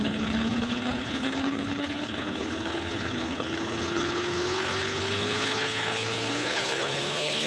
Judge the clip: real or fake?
fake